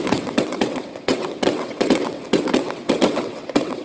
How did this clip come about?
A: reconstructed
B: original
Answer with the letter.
A